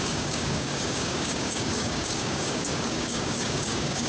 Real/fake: fake